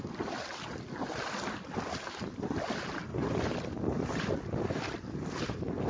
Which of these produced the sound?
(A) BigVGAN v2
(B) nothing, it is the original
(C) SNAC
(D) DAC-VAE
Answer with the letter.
B